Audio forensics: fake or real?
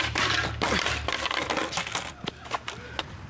real